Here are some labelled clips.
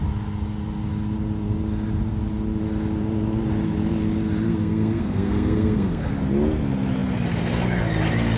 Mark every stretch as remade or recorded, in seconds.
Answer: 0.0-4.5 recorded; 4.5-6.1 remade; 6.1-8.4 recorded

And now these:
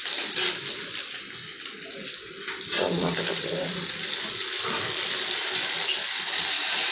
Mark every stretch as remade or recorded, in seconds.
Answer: 0.0-4.1 remade; 4.1-4.6 recorded; 4.6-5.2 remade; 5.2-6.9 recorded

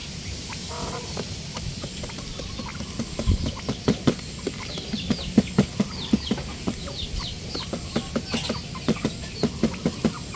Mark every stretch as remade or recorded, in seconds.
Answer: 0.0-10.4 recorded

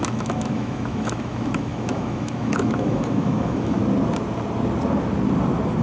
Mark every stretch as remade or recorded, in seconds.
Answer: 0.0-3.8 remade; 3.8-5.8 recorded

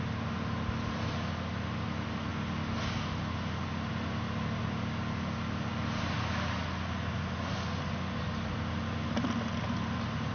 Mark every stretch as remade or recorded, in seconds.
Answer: 0.0-10.3 recorded

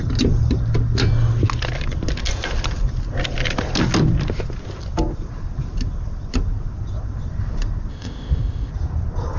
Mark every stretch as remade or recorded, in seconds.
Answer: 0.0-7.9 recorded; 7.9-8.7 remade; 8.7-9.4 recorded

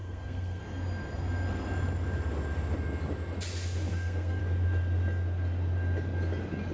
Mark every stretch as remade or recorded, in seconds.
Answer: 0.0-0.6 remade; 0.6-3.9 recorded; 3.9-4.4 remade; 4.4-6.7 recorded

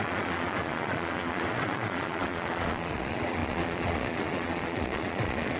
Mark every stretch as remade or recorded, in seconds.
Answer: 0.0-5.6 remade